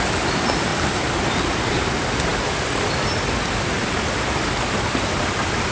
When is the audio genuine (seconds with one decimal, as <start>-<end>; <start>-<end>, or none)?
0.0-5.7